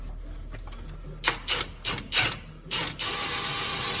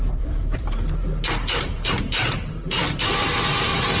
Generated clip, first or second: second